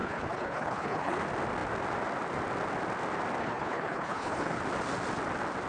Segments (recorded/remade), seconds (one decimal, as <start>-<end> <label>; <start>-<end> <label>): 0.0-1.2 remade; 1.2-3.4 recorded; 3.4-4.6 remade; 4.6-5.7 recorded